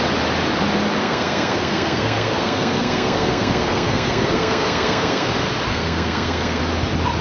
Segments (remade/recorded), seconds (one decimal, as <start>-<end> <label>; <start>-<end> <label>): 0.0-1.0 recorded; 1.0-5.3 remade; 5.3-5.7 recorded; 5.7-6.6 remade; 6.6-7.2 recorded

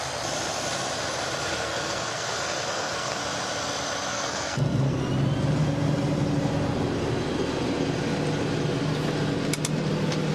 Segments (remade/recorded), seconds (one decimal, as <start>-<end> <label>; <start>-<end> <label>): 0.0-1.5 recorded; 1.5-3.2 remade; 3.2-4.1 recorded; 4.1-5.0 remade; 5.0-10.3 recorded

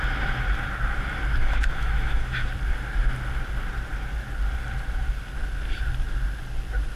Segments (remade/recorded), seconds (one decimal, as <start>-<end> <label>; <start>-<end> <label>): 0.0-1.4 recorded; 1.4-2.5 remade; 2.5-7.0 recorded

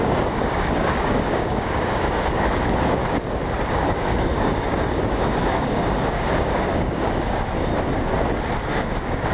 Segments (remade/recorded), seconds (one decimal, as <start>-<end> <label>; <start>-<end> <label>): 0.0-3.0 remade; 3.0-3.7 recorded; 3.7-7.7 remade; 7.7-8.7 recorded; 8.7-9.3 remade

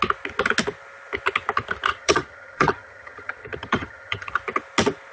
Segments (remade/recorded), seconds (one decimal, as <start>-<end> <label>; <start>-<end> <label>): 0.0-1.9 recorded; 1.9-4.3 remade; 4.3-5.1 recorded

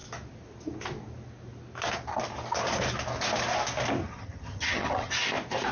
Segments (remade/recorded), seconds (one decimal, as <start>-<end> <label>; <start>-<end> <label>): 0.0-4.0 recorded; 4.0-5.1 remade; 5.1-5.7 recorded

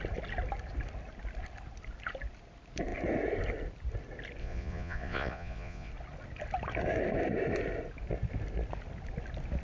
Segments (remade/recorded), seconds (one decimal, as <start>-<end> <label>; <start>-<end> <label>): 0.0-4.4 recorded; 4.4-5.9 remade; 5.9-9.6 recorded